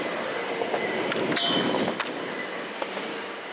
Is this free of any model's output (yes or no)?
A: yes